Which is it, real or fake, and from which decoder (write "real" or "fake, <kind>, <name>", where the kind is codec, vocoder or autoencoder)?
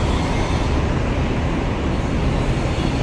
real